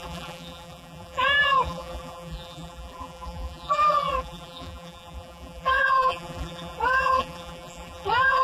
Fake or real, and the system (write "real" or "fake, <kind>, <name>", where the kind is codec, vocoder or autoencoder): fake, vocoder, BigVGAN v2